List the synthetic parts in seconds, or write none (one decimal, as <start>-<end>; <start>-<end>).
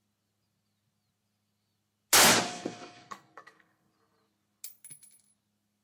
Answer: 2.5-3.9